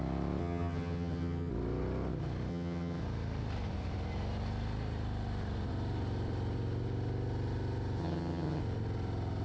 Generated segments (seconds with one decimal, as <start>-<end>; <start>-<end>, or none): 0.4-1.5; 2.5-3.0; 8.0-8.6